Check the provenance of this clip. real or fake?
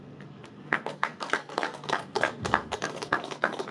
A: fake